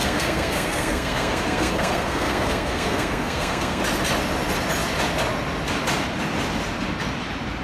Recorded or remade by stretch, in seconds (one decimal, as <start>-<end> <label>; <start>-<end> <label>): 0.0-3.8 remade; 3.8-7.6 recorded